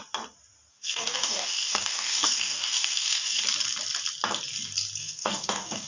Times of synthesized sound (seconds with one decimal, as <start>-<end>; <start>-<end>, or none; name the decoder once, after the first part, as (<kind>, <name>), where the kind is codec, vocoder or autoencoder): 0.7-3.4 (codec, DAC); 5.0-5.9